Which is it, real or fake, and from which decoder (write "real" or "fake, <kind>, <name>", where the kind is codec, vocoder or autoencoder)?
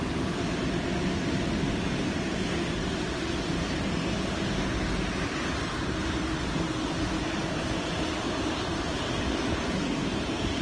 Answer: real